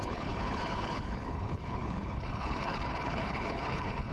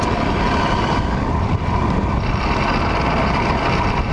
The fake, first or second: first